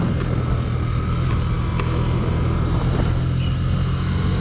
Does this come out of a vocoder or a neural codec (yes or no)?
no